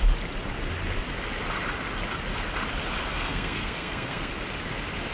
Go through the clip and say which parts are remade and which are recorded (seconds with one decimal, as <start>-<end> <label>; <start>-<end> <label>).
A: 0.0-3.1 recorded; 3.1-4.3 remade; 4.3-5.1 recorded